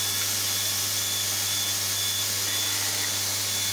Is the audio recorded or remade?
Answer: recorded